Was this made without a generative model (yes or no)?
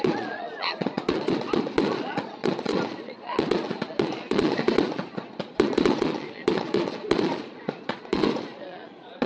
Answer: no